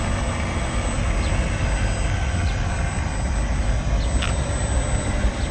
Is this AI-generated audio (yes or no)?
no